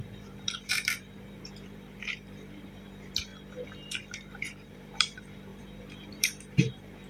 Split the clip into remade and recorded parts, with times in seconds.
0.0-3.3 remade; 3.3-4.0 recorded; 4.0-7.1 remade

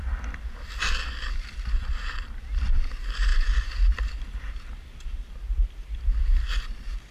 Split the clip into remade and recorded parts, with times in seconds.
0.0-3.3 recorded; 3.3-4.1 remade; 4.1-7.1 recorded

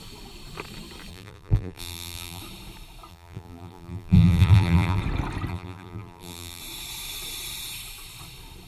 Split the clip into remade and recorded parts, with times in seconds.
0.0-1.1 recorded; 1.1-2.4 remade; 2.4-3.1 recorded; 3.1-5.0 remade; 5.0-5.5 recorded; 5.5-6.6 remade; 6.6-8.7 recorded